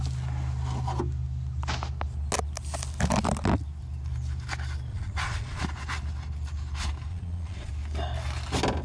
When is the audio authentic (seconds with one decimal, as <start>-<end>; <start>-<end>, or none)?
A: 0.0-4.9; 5.6-7.1; 7.7-8.8